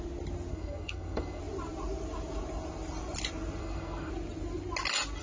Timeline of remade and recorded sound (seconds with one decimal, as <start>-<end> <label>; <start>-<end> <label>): 0.0-0.5 recorded; 0.5-1.4 remade; 1.4-3.6 recorded; 3.6-4.1 remade; 4.1-5.2 recorded